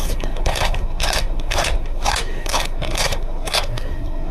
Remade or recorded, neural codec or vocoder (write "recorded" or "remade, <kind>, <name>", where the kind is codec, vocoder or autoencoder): remade, codec, SNAC